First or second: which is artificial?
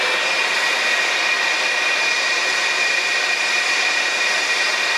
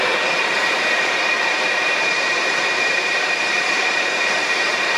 second